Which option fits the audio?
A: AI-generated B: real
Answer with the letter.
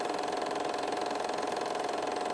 A